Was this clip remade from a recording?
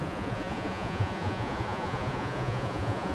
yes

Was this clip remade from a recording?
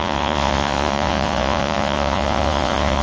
yes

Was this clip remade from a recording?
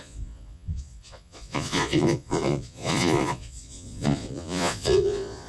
yes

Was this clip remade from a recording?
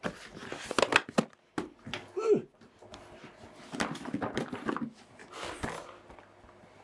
no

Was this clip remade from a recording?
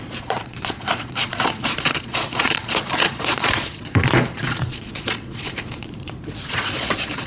yes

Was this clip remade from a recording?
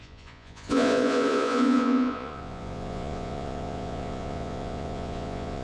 yes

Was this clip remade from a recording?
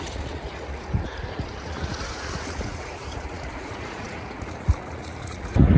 yes